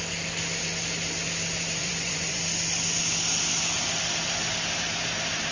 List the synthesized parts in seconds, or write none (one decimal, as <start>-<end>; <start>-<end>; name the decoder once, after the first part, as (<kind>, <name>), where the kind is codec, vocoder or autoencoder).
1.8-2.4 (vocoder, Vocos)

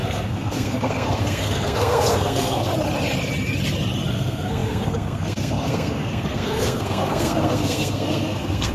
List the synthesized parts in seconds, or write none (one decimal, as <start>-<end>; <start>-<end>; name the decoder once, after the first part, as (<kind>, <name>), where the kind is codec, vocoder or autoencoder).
0.0-2.7 (codec, SNAC); 4.1-8.7

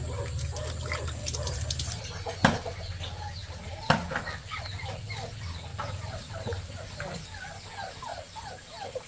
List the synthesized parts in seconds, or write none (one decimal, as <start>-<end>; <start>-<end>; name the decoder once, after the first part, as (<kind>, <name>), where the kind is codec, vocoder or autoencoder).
1.2-2.0 (vocoder, BigVGAN v2); 3.4-4.2; 5.7-6.3; 8.1-9.1